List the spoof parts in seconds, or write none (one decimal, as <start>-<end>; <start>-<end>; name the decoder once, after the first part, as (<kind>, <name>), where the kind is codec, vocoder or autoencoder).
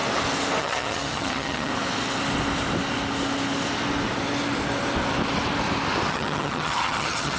0.6-1.7 (vocoder, HiFi-GAN); 6.1-7.4